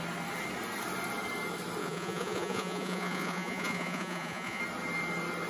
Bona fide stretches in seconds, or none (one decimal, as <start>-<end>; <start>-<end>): 0.0-1.8; 4.6-5.5